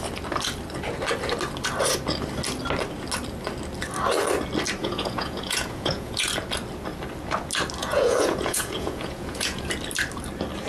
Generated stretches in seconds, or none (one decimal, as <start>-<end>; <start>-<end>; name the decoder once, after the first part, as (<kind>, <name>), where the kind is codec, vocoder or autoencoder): 4.8-6.3 (vocoder, Vocos); 7.8-9.7